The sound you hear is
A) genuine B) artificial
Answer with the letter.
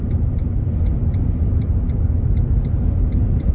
A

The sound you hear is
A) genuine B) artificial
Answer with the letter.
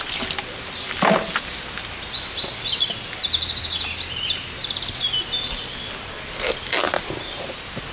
A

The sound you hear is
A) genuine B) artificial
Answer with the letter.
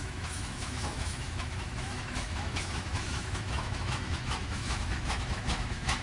B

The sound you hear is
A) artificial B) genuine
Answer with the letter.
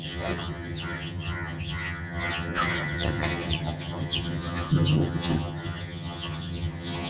A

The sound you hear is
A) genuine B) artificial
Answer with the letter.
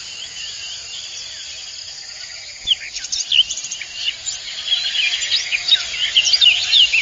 A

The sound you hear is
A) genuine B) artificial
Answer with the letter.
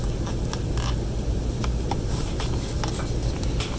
A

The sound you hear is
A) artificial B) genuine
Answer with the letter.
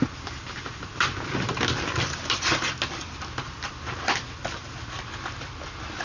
B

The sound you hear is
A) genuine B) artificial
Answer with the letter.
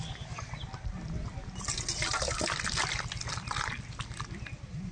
A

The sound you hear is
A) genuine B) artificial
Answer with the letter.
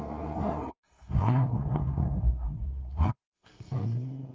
B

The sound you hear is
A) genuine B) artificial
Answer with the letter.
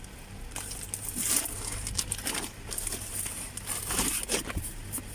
A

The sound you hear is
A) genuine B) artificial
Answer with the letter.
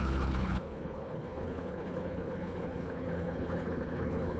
B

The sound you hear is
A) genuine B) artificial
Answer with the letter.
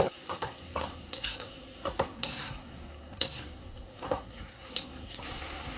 B